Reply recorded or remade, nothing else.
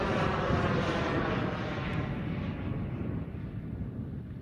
recorded